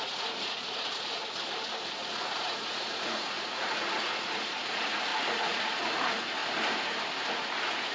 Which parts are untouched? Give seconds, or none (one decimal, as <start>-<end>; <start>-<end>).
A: 1.2-1.9; 6.4-7.3